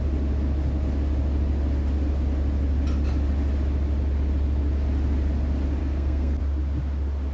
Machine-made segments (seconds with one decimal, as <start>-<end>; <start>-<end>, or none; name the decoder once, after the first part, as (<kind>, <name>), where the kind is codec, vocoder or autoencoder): 5.8-6.4 (codec, SNAC)

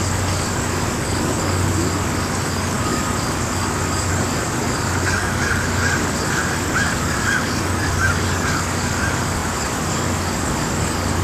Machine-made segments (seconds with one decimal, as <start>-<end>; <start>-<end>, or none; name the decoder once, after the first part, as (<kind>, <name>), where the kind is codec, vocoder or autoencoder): 0.0-11.2 (codec, DAC)

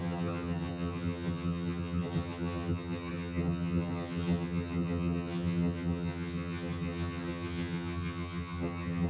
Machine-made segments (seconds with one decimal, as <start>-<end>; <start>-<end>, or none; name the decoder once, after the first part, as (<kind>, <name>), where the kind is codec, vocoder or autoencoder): 0.0-9.1 (vocoder, HiFi-GAN)

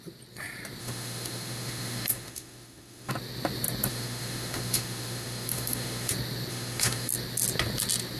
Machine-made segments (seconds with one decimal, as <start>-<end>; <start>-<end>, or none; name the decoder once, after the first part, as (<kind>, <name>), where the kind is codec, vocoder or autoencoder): 0.8-3.1 (autoencoder, DAC-VAE); 3.9-6.1; 6.5-7.1

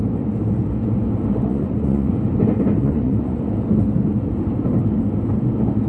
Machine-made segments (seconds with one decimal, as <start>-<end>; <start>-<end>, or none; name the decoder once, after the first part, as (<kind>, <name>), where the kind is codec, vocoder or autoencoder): 1.3-2.1 (vocoder, Vocos); 2.8-3.4

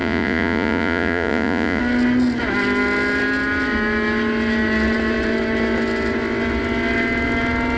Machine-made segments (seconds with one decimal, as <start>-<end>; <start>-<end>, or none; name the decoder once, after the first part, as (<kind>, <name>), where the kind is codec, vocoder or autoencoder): 0.0-1.8 (vocoder, Vocos)